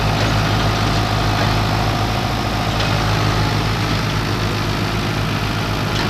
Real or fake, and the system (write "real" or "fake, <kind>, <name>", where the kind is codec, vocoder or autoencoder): real